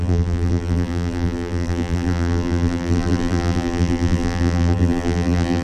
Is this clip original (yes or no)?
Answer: no